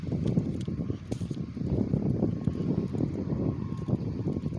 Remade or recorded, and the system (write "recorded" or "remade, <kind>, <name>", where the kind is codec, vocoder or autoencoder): recorded